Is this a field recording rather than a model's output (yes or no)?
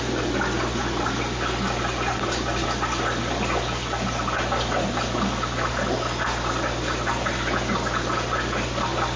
yes